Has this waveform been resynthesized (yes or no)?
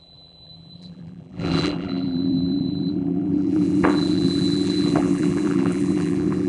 yes